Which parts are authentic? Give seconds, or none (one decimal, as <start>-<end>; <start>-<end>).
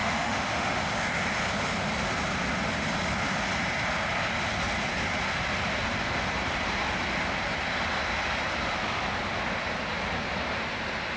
0.9-11.2